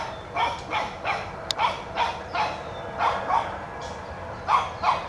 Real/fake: real